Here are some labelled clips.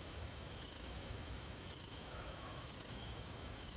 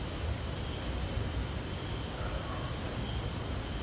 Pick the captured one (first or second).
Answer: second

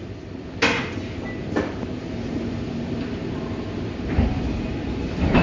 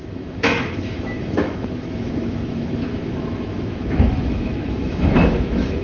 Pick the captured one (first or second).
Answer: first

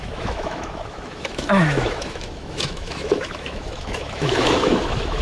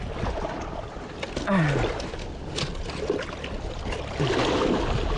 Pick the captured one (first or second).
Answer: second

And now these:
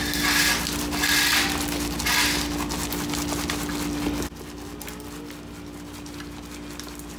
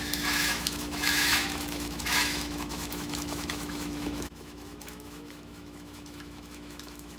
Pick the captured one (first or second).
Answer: first